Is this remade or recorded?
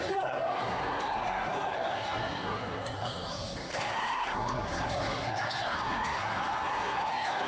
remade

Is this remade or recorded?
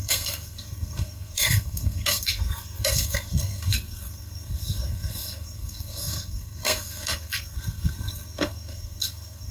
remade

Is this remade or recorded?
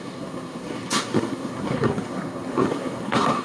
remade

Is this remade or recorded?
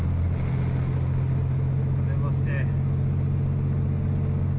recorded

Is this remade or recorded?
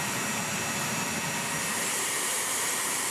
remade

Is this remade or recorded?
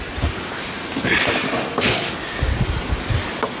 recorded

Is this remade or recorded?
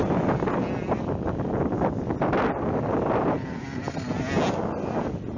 recorded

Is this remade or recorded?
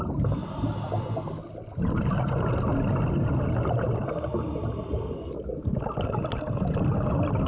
recorded